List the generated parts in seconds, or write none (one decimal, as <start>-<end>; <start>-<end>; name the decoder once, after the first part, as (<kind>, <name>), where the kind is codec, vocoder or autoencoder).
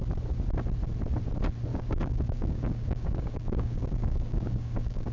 1.7-5.1 (codec, DAC)